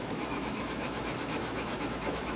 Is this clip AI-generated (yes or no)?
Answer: yes